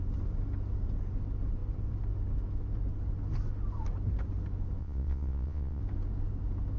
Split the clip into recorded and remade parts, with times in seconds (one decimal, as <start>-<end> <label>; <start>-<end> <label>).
0.0-4.8 recorded; 4.8-5.8 remade; 5.8-6.8 recorded